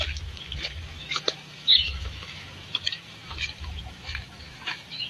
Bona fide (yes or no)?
no